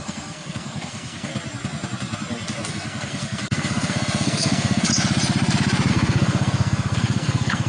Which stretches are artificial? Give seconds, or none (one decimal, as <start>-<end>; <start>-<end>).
0.0-1.3; 2.7-4.9; 5.9-7.7